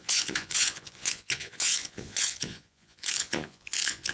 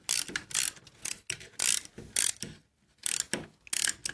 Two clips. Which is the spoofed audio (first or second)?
first